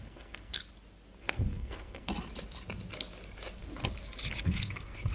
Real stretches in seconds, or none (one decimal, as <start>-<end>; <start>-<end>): 0.6-1.2; 2.1-4.4